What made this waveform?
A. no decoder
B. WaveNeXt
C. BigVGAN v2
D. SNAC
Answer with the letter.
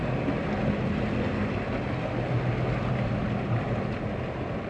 A